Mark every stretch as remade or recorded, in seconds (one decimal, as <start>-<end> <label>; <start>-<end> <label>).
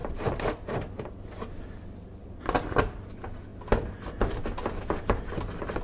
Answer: 0.0-5.8 recorded